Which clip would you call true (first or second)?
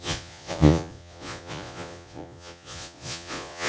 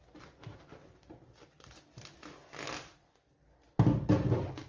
second